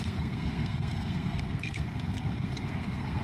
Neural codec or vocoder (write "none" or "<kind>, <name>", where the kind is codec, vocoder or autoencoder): codec, SNAC